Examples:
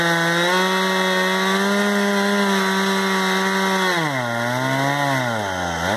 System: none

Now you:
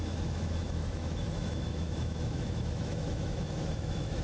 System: autoencoder, DAC-VAE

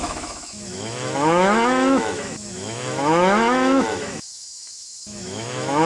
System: autoencoder, DAC-VAE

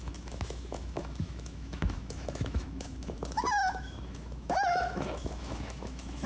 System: autoencoder, DAC-VAE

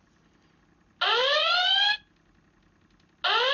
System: none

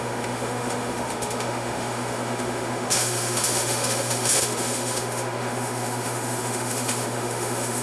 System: autoencoder, DAC-VAE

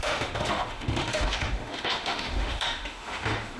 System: autoencoder, DAC-VAE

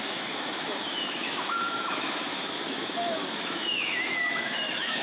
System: autoencoder, DAC-VAE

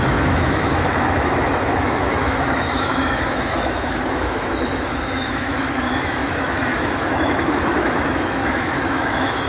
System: autoencoder, DAC-VAE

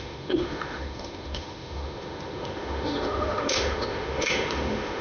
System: autoencoder, DAC-VAE